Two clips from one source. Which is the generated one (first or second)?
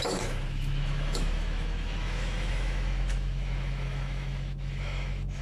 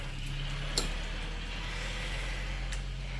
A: first